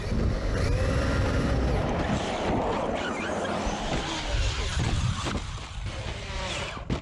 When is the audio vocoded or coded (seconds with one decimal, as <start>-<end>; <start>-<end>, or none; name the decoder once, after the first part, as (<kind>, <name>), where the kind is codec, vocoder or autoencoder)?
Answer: 0.0-1.2 (vocoder, BigVGAN v2); 4.7-5.4